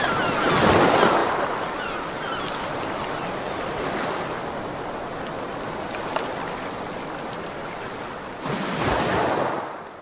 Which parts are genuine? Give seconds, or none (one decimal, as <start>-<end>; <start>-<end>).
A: 0.0-10.0